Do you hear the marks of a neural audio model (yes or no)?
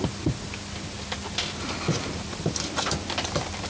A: no